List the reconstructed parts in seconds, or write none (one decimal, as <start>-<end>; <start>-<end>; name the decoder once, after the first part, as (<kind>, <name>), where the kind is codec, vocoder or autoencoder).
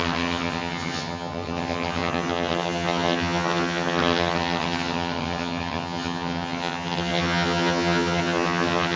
0.0-9.0 (vocoder, HiFi-GAN)